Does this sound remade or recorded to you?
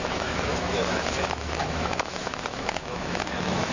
remade